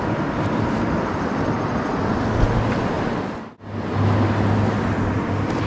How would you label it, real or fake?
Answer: real